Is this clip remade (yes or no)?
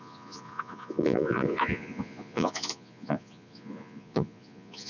yes